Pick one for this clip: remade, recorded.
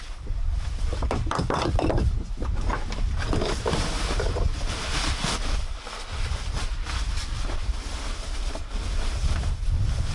remade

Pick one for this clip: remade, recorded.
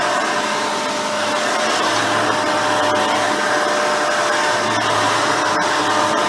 recorded